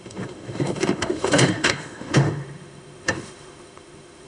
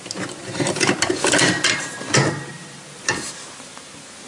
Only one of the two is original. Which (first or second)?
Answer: second